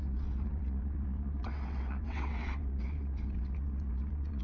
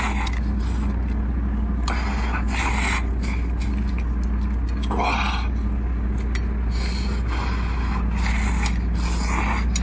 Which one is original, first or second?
second